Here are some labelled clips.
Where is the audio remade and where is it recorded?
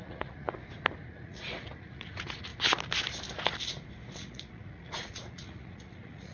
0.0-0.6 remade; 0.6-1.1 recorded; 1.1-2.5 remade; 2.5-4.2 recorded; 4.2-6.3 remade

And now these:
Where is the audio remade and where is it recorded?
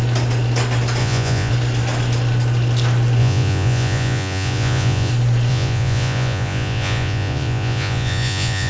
0.0-1.0 recorded; 1.0-1.5 remade; 1.5-3.2 recorded; 3.2-5.1 remade; 5.1-5.5 recorded; 5.5-8.7 remade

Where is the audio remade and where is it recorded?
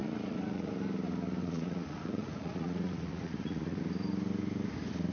0.0-0.7 remade; 0.7-1.4 recorded; 1.4-3.8 remade; 3.8-5.1 recorded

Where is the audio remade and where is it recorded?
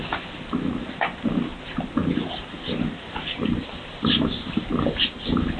0.0-5.6 recorded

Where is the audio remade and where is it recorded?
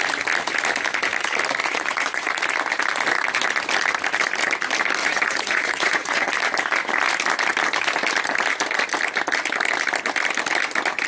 0.0-1.6 recorded; 1.6-2.4 remade; 2.4-5.0 recorded; 5.0-6.3 remade; 6.3-11.1 recorded